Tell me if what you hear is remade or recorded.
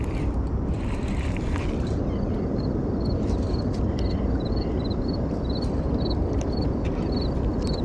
remade